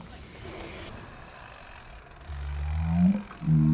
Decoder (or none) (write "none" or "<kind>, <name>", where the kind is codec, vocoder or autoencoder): none